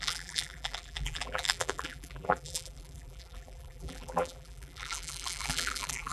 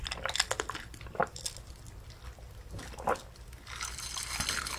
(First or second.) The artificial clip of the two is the first